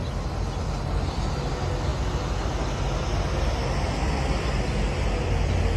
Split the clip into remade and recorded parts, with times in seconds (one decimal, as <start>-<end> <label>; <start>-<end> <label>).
0.0-5.8 recorded